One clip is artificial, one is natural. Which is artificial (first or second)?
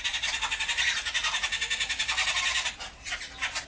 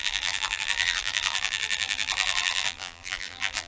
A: second